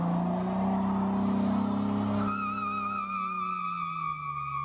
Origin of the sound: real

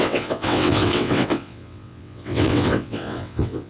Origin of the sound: fake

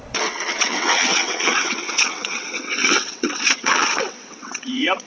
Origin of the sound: fake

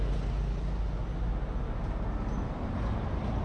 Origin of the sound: real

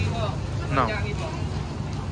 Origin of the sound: real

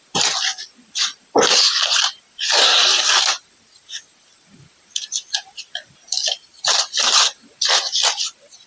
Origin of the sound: real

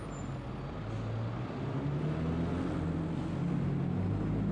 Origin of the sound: real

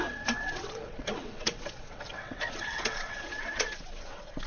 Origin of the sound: fake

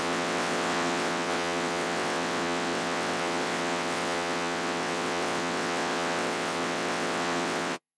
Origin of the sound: fake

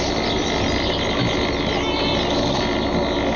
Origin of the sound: real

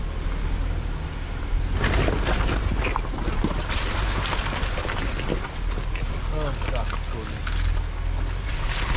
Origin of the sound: real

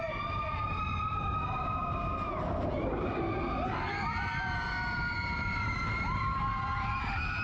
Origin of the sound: real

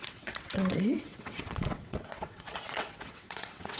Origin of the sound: fake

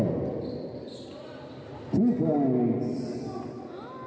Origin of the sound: real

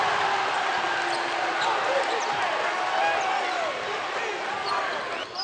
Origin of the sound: real